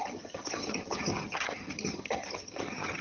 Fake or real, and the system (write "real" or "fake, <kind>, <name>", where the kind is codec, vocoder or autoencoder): fake, vocoder, HiFi-GAN